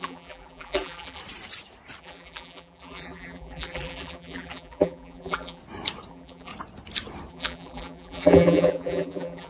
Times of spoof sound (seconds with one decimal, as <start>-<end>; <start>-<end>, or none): 0.0-1.2; 2.0-5.6; 6.1-6.5; 7.3-9.5